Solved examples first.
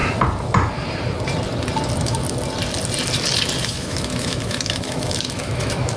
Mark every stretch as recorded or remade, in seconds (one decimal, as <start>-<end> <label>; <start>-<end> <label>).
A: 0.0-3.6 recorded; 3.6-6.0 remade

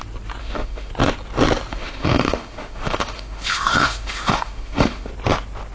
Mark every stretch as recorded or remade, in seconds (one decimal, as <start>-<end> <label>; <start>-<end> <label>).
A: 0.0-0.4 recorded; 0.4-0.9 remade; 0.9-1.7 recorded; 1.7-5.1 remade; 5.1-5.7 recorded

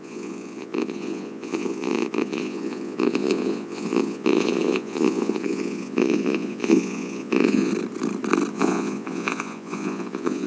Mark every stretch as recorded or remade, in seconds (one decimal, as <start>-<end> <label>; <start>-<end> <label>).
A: 0.0-7.7 remade; 7.7-8.5 recorded; 8.5-10.5 remade

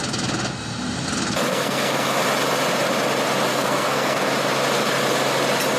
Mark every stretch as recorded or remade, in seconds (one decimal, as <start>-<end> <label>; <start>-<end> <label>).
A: 0.0-1.5 recorded; 1.5-2.1 remade; 2.1-3.5 recorded; 3.5-4.2 remade; 4.2-5.8 recorded

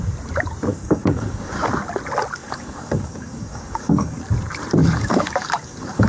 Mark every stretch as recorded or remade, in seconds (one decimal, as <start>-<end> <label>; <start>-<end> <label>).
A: 0.0-0.7 recorded; 0.7-1.5 remade; 1.5-2.4 recorded; 2.4-4.2 remade; 4.2-4.8 recorded; 4.8-6.1 remade

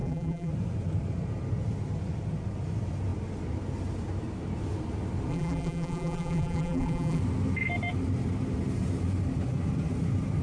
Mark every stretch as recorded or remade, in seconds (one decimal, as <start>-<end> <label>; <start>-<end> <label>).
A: 0.0-0.5 remade; 0.5-5.3 recorded; 5.3-7.2 remade; 7.2-10.4 recorded